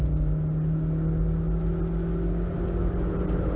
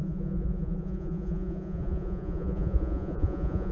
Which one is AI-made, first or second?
second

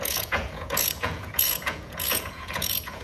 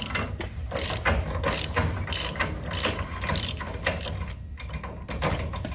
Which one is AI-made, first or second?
first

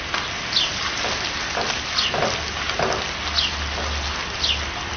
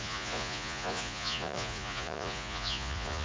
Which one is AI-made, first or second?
second